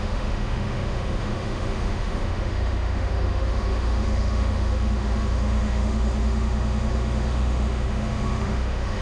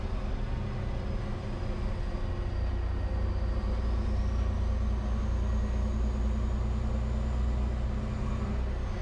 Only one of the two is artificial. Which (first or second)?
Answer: first